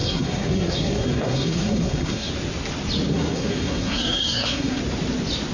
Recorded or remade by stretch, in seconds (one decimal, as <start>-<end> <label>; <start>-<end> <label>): 0.0-2.3 remade; 2.3-3.1 recorded; 3.1-4.8 remade; 4.8-5.5 recorded